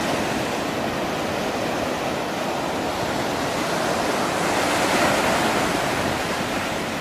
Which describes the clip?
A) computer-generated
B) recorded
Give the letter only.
B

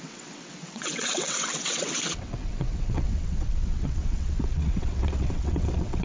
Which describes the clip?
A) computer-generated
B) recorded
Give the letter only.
A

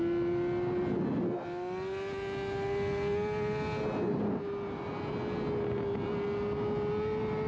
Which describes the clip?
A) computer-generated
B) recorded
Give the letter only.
B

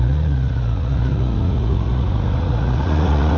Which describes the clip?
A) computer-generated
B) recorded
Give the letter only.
A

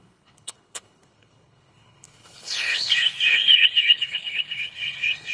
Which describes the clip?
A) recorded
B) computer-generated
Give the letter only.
B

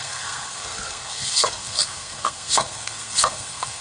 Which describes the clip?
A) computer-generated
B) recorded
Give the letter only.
A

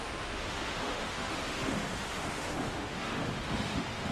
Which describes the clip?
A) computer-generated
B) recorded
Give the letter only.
A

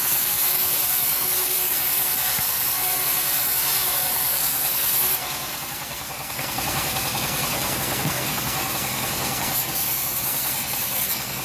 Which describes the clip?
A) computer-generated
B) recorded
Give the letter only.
A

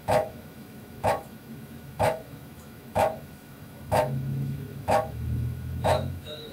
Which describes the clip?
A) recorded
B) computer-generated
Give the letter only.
B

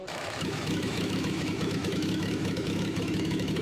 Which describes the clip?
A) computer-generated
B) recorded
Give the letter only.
A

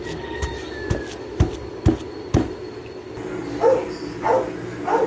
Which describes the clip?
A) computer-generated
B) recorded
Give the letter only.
B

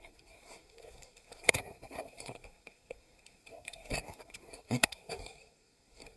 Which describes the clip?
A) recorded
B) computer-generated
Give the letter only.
B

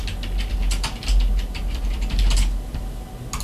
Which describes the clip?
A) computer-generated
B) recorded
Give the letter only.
B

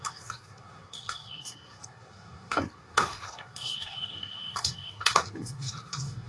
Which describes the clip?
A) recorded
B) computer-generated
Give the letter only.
B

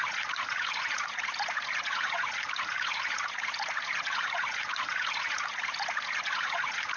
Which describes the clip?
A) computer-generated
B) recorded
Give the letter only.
A